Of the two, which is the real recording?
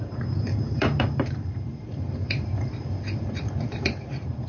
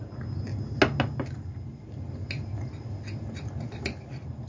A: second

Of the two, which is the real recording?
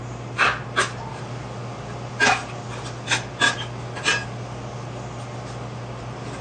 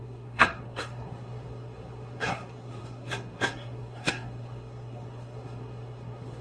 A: first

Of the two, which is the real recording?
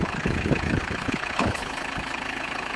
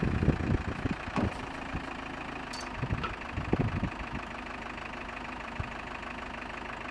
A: second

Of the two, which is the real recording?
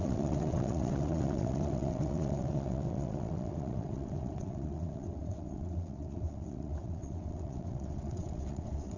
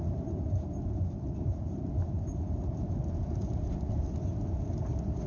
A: second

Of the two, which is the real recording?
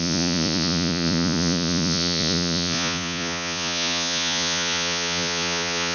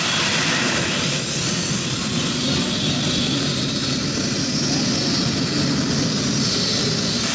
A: second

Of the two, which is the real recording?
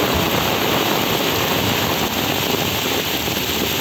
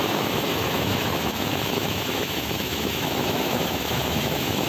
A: first